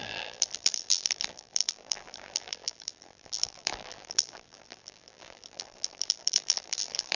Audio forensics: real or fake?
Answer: fake